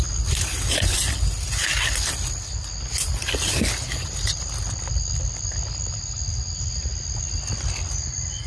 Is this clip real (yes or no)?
yes